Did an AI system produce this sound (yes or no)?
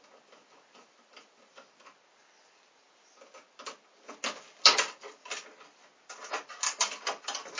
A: no